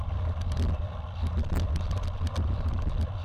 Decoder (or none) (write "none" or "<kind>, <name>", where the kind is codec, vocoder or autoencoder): none